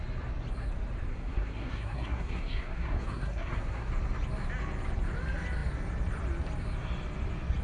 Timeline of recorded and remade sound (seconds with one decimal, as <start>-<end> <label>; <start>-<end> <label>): 0.0-1.1 recorded; 1.1-3.9 remade; 3.9-7.6 recorded